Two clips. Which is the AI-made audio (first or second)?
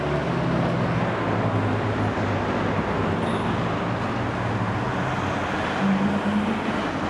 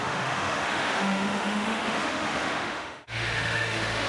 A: second